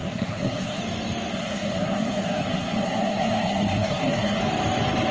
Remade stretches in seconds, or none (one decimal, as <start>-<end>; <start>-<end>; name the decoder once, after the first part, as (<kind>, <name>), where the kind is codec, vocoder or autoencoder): 0.0-0.8 (codec, SNAC); 1.3-4.4

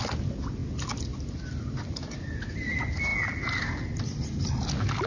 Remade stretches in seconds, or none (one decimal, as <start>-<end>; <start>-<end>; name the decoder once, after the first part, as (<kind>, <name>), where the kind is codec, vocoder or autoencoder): none

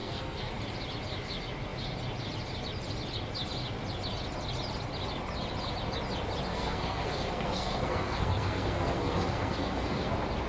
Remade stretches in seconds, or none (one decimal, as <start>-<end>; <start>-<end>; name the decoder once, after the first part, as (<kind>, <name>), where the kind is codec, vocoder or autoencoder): 0.0-0.5 (codec, SNAC); 6.5-10.1

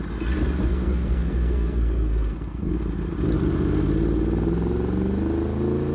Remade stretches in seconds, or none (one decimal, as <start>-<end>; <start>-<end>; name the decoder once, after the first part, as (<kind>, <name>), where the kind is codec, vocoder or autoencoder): 0.6-2.7 (codec, SNAC)